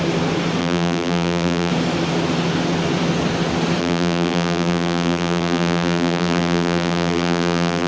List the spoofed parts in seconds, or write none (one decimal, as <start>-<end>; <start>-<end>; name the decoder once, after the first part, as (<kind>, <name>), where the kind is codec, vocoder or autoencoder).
0.6-1.7 (vocoder, BigVGAN v2); 3.8-7.9